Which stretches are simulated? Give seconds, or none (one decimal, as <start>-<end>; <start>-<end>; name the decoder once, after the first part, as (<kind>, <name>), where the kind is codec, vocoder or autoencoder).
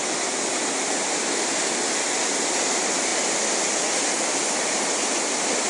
none